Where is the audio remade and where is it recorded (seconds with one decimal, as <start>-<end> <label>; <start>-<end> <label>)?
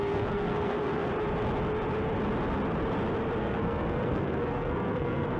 0.0-1.1 remade; 1.1-3.4 recorded; 3.4-5.4 remade